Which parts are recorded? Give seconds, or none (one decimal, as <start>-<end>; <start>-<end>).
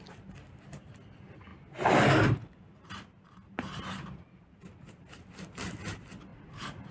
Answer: 0.0-6.3